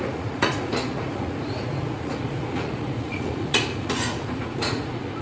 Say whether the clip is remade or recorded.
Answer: remade